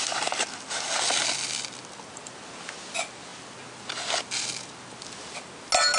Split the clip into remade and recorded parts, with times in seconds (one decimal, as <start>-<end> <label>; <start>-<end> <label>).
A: 0.0-6.0 recorded